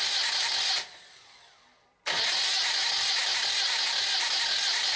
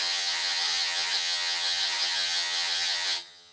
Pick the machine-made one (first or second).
second